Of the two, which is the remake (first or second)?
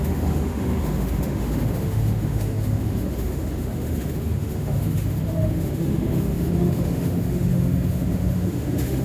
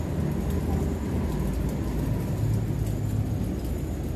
first